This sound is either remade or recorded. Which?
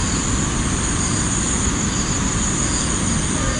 recorded